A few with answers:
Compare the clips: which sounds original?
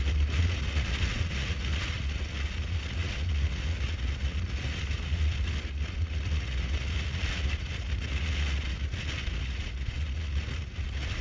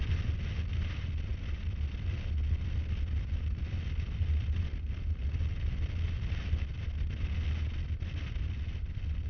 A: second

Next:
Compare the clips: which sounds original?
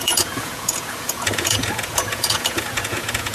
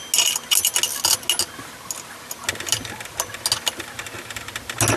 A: second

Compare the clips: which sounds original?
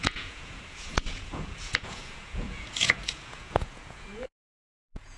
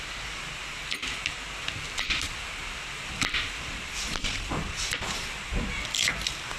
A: second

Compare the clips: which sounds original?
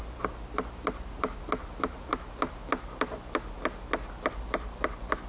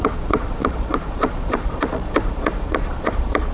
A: first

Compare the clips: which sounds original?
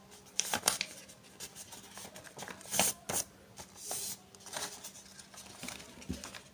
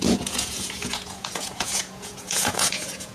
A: first